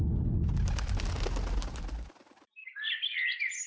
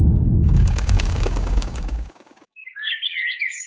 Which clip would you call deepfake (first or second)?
second